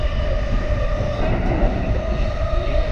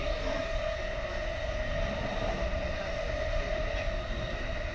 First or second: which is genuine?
second